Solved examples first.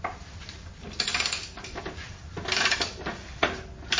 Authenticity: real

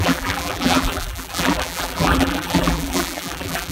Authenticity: fake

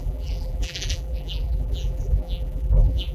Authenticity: fake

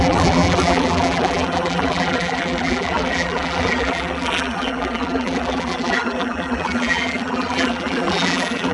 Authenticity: fake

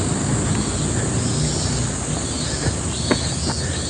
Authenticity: real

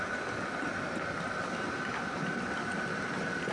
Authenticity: real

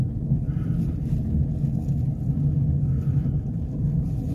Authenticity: real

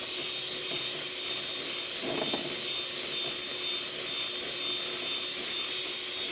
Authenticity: real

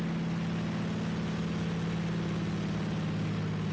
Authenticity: real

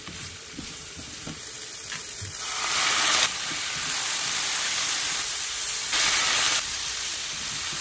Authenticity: fake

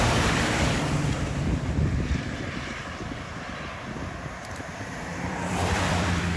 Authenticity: fake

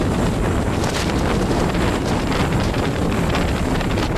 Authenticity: fake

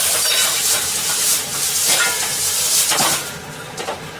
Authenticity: fake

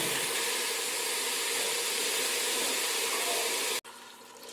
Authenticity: real